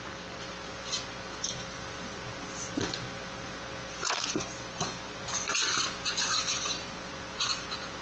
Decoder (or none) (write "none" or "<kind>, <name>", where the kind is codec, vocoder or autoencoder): vocoder, Vocos